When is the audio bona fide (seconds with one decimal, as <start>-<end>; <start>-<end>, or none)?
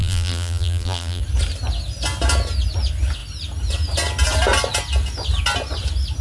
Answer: 1.2-6.2